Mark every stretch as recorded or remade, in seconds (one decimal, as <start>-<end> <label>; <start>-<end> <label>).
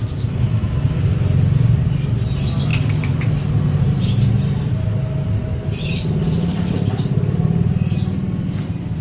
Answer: 0.0-5.4 recorded; 5.4-7.7 remade; 7.7-9.0 recorded